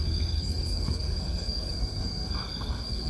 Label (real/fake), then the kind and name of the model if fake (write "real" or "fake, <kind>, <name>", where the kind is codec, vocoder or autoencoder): fake, codec, SNAC